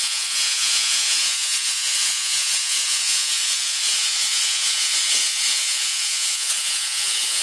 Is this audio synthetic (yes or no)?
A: yes